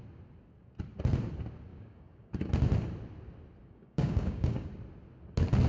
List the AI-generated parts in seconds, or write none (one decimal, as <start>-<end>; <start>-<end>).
1.7-2.5; 3.6-4.7